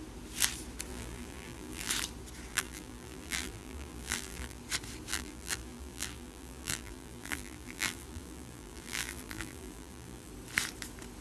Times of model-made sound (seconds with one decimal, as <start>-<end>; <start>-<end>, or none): 0.9-1.9; 2.5-4.6; 5.1-10.3